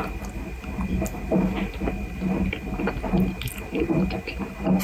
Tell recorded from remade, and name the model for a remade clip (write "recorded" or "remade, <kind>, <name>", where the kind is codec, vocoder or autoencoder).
recorded